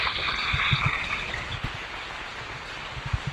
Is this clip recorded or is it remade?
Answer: recorded